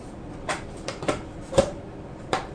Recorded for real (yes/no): no